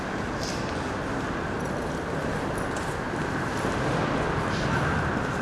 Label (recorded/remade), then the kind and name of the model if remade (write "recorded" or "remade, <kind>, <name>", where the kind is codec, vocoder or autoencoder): recorded